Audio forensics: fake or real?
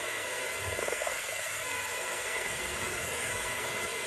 fake